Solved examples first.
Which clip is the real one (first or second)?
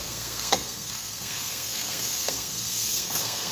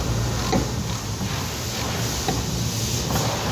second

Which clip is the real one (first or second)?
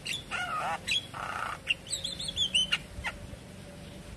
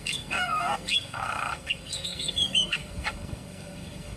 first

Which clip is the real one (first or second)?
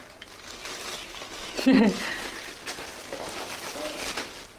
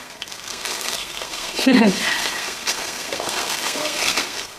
first